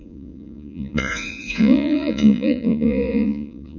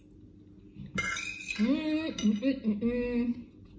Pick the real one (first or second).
second